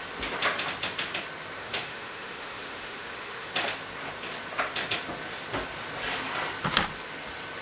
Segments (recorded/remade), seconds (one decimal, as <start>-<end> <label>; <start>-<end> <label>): 0.0-1.6 recorded; 1.6-3.5 remade; 3.5-7.6 recorded